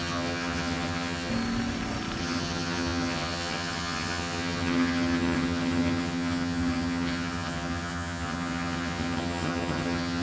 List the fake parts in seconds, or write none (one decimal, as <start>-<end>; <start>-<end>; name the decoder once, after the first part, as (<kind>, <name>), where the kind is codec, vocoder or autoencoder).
0.0-1.3 (vocoder, HiFi-GAN); 2.2-10.2